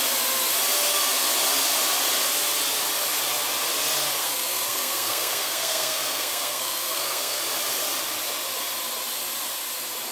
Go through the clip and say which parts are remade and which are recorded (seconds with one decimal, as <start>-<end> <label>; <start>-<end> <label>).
0.0-4.2 recorded; 4.2-7.4 remade; 7.4-10.1 recorded